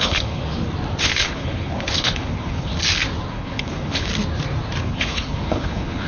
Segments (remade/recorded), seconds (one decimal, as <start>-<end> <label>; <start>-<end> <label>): 0.0-0.4 remade; 0.4-1.0 recorded; 1.0-2.7 remade; 2.7-3.3 recorded; 3.3-4.1 remade; 4.1-4.8 recorded; 4.8-6.1 remade